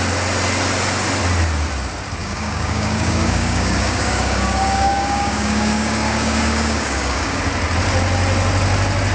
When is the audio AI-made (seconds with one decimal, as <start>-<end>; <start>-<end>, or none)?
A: 2.2-7.4